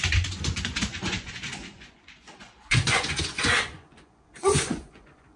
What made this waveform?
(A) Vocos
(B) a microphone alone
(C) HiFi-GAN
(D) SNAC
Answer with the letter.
A